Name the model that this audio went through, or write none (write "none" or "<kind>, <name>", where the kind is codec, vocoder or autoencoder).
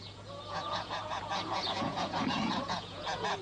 vocoder, Vocos